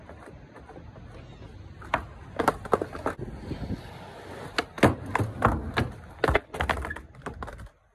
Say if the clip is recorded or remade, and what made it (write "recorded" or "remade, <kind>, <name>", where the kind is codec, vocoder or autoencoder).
recorded